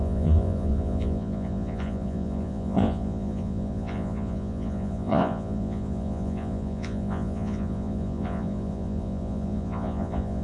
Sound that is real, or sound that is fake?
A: fake